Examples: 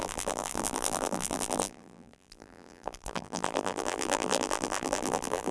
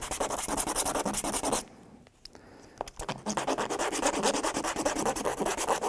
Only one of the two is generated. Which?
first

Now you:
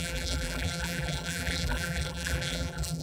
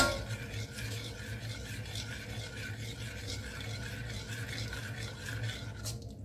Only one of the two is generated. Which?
first